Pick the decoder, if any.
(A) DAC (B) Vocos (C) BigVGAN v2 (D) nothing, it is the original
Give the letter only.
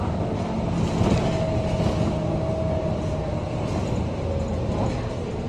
D